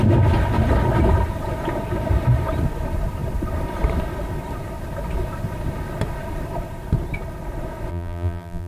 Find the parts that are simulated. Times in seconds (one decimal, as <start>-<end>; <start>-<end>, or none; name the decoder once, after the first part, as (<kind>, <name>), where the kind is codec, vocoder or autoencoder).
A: 7.9-8.7 (vocoder, BigVGAN v2)